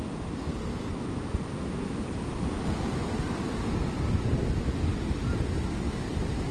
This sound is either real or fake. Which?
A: real